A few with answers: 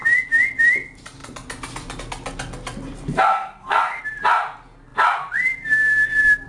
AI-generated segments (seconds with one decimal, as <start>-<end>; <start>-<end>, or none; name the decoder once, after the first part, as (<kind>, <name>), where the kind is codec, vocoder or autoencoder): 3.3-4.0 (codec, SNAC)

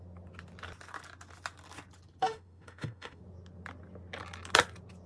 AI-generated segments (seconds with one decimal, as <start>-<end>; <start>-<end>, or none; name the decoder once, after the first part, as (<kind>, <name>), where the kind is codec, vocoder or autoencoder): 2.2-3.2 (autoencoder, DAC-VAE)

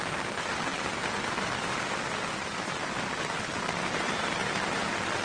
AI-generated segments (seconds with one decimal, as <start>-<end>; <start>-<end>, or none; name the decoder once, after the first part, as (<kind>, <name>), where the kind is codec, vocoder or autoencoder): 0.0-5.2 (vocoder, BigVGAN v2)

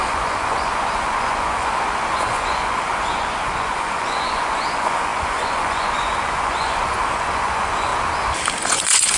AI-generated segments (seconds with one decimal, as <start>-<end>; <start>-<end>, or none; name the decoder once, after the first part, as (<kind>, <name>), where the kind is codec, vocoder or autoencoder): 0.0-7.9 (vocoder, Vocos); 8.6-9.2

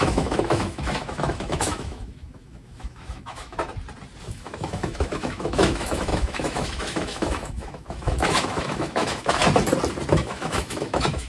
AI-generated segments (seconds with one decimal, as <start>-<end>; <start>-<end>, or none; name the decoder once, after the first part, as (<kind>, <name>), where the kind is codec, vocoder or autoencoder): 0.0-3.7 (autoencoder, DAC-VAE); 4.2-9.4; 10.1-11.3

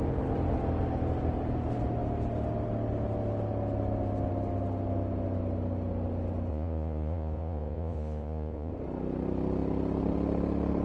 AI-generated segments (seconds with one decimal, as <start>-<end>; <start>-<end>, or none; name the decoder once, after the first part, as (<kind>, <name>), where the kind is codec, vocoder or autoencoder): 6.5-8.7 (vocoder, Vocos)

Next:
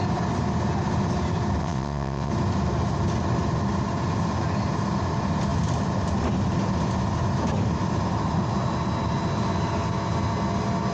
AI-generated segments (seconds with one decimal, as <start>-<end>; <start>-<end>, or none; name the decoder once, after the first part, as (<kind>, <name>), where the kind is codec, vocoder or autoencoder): 1.6-2.3 (vocoder, WaveNeXt)